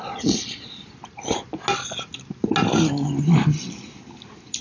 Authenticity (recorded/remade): recorded